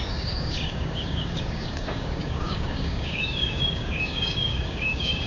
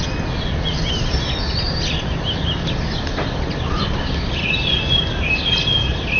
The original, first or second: second